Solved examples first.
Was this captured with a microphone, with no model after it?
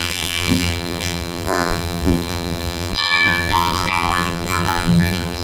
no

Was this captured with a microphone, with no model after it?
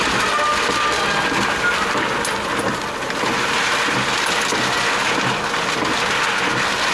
yes